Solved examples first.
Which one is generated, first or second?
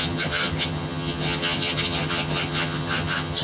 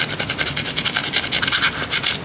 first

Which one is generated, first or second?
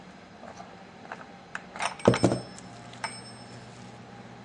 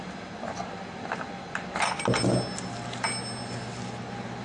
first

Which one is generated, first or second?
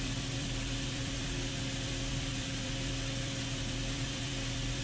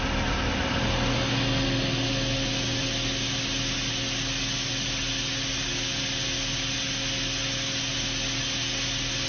first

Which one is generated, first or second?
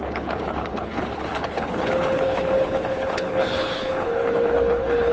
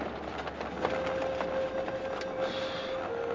first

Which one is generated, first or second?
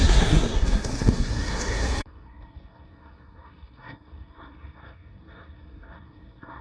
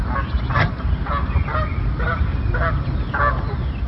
first